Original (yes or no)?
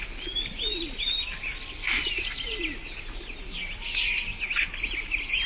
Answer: yes